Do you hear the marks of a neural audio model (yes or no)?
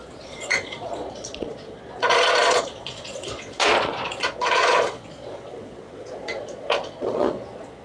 yes